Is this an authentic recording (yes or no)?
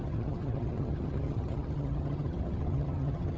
no